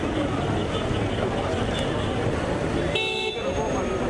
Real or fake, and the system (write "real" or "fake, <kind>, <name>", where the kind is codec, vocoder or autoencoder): real